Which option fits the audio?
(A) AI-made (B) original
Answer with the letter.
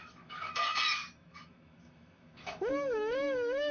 A